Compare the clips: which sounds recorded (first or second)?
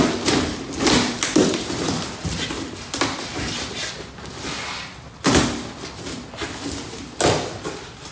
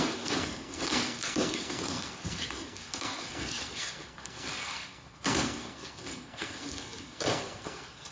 first